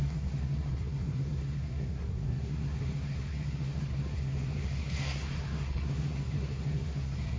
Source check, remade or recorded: remade